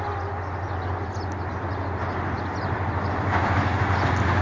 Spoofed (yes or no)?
no